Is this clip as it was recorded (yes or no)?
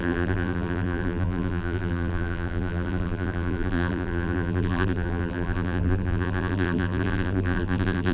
no